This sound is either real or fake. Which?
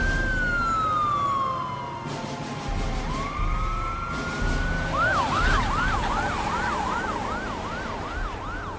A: real